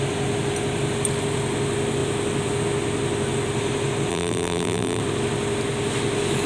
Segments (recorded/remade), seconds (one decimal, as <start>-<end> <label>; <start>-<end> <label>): 0.0-4.1 recorded; 4.1-5.0 remade; 5.0-6.5 recorded